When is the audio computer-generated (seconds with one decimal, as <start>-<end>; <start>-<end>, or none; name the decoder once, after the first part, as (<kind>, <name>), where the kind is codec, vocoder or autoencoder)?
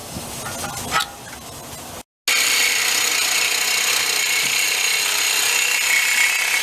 none